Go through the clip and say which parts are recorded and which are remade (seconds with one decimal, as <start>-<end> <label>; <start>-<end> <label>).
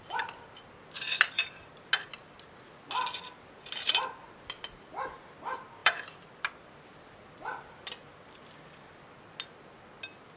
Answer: 0.0-5.8 recorded; 5.8-6.7 remade; 6.7-10.4 recorded